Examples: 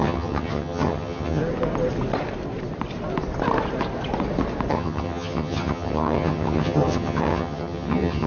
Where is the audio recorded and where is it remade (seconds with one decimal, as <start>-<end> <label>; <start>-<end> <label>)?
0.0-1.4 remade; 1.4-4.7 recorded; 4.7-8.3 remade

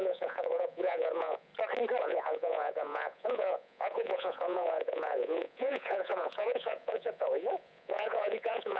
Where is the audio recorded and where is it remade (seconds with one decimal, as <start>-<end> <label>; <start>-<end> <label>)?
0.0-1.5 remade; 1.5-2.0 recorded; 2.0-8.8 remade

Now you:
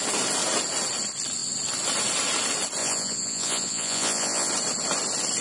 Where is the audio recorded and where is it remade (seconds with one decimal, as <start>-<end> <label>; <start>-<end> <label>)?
0.0-2.8 recorded; 2.8-4.5 remade; 4.5-5.4 recorded

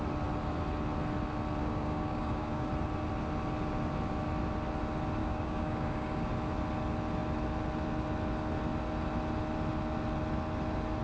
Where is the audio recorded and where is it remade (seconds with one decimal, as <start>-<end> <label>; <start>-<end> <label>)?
0.0-1.6 recorded; 1.6-2.7 remade; 2.7-5.2 recorded; 5.2-6.3 remade; 6.3-11.0 recorded

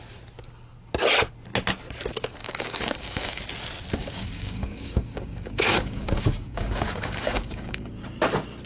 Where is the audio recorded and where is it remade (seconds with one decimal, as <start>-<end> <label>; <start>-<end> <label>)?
0.0-2.4 recorded; 2.4-3.4 remade; 3.4-4.0 recorded; 4.0-7.9 remade; 7.9-8.7 recorded